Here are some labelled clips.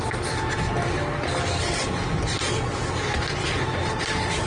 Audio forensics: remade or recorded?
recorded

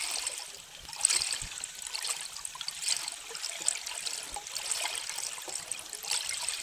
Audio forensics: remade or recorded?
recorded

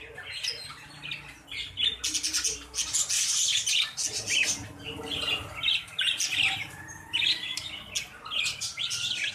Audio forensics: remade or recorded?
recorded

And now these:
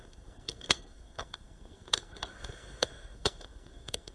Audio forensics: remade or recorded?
remade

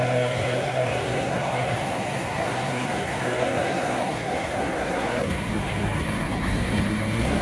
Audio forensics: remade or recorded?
remade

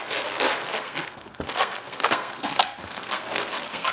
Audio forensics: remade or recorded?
remade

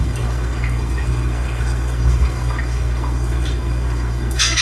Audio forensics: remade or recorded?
remade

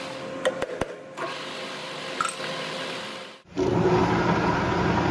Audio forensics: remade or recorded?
recorded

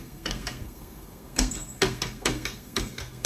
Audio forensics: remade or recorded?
remade